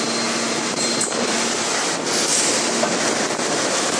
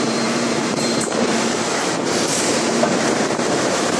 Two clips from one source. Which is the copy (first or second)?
second